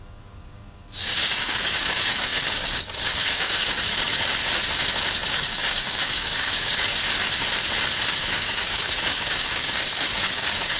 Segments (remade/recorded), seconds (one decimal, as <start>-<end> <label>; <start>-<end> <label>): 0.0-4.1 remade; 4.1-5.3 recorded; 5.3-6.9 remade; 6.9-8.1 recorded; 8.1-10.8 remade